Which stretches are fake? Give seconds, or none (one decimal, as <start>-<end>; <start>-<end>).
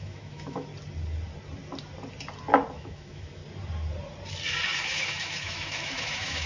0.0-0.7; 2.7-3.4; 4.8-6.5